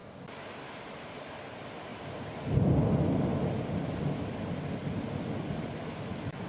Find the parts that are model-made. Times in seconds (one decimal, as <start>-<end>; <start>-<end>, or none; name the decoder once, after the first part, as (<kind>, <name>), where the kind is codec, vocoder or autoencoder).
none